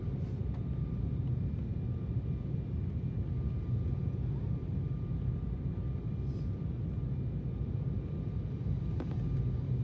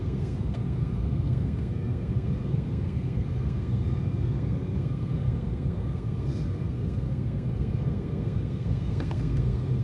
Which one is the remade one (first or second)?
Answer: second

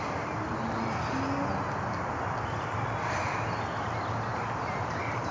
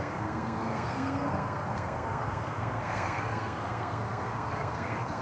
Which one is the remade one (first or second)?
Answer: second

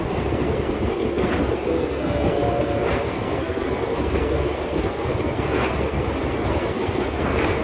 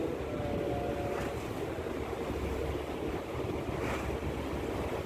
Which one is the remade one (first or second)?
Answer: first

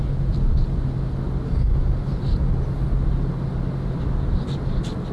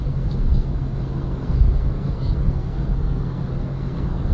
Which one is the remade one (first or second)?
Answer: second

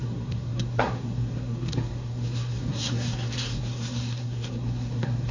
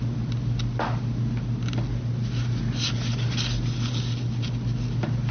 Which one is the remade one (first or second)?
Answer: first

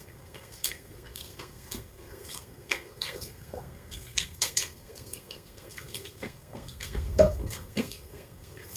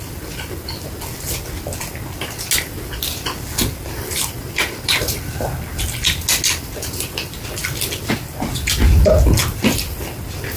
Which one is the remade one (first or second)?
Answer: first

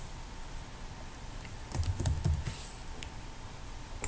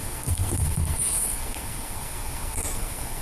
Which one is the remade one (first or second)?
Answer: second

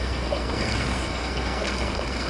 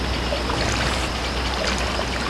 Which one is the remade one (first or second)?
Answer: first